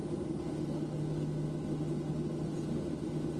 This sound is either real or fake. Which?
real